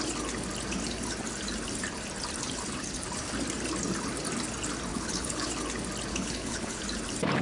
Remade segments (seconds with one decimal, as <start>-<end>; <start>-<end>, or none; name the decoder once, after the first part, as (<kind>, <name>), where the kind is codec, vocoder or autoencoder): 4.9-5.5 (codec, HILCodec); 6.1-6.8